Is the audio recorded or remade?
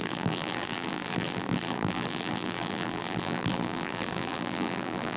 remade